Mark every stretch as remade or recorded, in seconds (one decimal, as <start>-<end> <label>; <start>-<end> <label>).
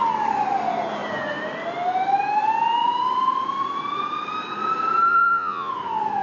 0.0-5.1 recorded; 5.1-5.7 remade; 5.7-6.2 recorded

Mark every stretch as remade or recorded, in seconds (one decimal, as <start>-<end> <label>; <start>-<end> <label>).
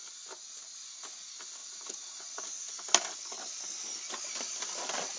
0.0-1.6 recorded; 1.6-2.7 remade; 2.7-5.2 recorded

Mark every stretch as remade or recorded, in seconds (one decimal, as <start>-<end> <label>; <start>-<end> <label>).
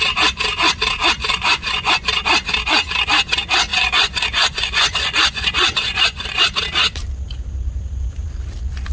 0.0-1.3 recorded; 1.3-2.2 remade; 2.2-3.7 recorded; 3.7-6.4 remade; 6.4-8.9 recorded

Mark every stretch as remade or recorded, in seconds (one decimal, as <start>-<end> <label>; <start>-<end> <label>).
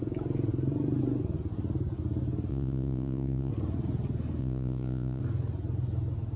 0.0-2.5 recorded; 2.5-3.5 remade; 3.5-4.4 recorded; 4.4-5.2 remade; 5.2-6.4 recorded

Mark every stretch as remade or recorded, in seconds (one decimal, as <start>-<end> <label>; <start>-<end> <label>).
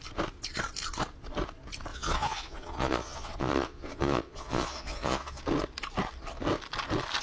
0.0-1.9 recorded; 1.9-5.4 remade; 5.4-7.2 recorded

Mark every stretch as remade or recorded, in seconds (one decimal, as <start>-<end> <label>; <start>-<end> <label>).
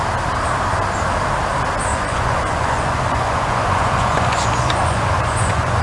0.0-1.9 recorded; 1.9-5.8 remade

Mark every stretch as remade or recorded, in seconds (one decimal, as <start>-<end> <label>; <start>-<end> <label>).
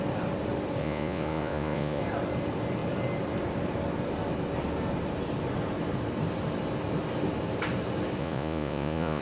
0.0-0.8 recorded; 0.8-2.0 remade; 2.0-8.2 recorded; 8.2-9.2 remade